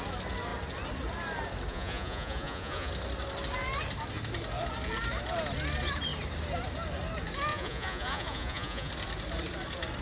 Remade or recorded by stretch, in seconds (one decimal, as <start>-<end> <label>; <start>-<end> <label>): 0.0-1.7 recorded; 1.7-2.9 remade; 2.9-7.5 recorded; 7.5-8.9 remade; 8.9-10.0 recorded